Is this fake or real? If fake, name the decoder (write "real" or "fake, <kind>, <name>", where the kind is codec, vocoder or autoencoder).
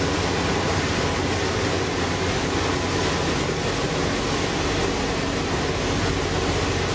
real